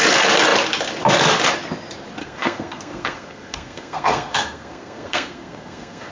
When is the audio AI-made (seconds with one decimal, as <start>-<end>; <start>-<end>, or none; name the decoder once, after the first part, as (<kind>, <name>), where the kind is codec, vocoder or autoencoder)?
2.2-6.1 (codec, SNAC)